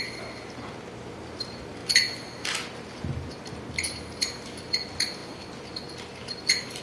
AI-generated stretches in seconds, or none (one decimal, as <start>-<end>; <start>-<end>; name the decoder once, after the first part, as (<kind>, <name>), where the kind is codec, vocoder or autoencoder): none